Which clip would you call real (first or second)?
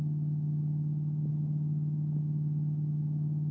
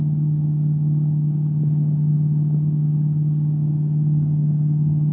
first